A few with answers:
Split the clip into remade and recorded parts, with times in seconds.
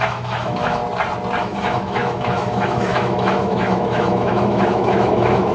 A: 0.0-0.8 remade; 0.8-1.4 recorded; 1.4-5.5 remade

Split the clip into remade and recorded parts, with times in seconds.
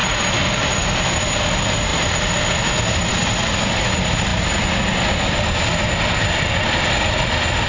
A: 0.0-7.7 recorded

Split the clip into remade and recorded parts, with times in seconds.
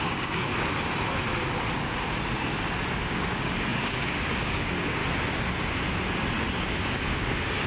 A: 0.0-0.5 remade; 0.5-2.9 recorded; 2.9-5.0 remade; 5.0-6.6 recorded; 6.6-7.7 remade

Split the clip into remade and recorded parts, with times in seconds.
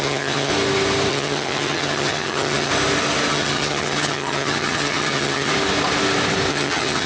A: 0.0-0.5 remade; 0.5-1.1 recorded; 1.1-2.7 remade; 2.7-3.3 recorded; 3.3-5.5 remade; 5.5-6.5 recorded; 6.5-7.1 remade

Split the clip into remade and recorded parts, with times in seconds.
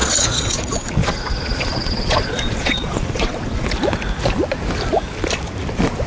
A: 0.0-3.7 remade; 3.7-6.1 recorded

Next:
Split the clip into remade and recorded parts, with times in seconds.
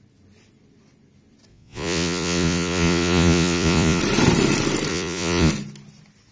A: 0.0-1.5 recorded; 1.5-4.0 remade; 4.0-4.9 recorded; 4.9-5.5 remade; 5.5-6.3 recorded